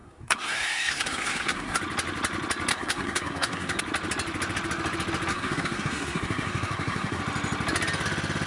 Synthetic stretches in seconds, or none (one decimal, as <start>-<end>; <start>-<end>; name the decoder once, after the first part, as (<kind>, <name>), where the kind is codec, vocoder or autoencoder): 0.0-1.8 (codec, SNAC); 2.7-3.8; 5.3-7.2